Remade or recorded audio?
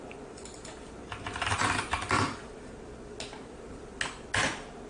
recorded